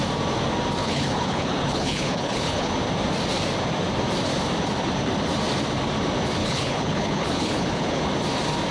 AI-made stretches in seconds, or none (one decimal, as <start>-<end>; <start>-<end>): 0.8-2.7; 6.4-8.0